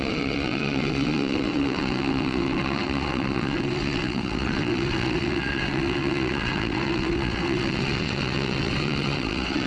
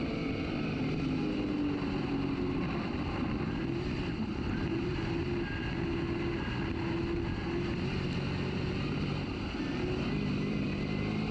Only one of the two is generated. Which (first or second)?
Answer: first